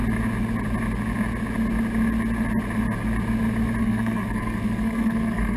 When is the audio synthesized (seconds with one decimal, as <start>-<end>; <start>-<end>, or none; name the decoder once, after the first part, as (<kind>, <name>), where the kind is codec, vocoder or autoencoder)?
3.8-5.6 (codec, SNAC)